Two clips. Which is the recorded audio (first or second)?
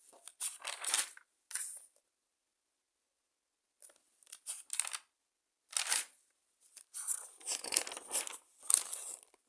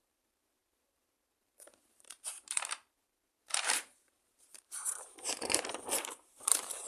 first